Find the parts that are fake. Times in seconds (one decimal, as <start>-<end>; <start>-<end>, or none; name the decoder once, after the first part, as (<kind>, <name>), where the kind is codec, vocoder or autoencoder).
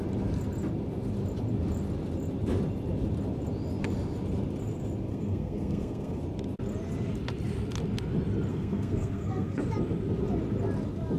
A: 5.1-6.2 (codec, SNAC); 8.5-9.6